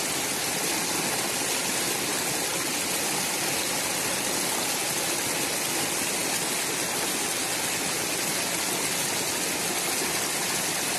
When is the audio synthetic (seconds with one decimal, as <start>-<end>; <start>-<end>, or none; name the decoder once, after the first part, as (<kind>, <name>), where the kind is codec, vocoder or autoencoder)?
none